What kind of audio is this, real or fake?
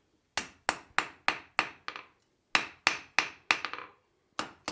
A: real